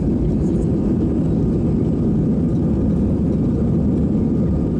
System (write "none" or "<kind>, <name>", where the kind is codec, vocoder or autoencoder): none